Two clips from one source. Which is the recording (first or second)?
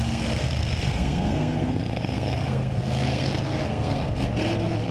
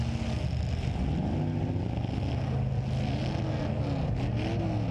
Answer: second